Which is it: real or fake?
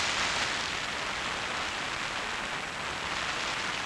real